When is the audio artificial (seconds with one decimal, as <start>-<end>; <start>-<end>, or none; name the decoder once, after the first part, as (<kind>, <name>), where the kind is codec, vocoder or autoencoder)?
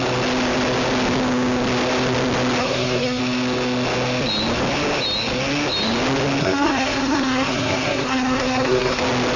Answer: 2.6-3.2 (codec, SNAC); 6.4-9.0